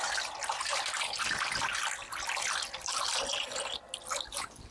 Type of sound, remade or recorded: recorded